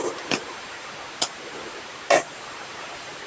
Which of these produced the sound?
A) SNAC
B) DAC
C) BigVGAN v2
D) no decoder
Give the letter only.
D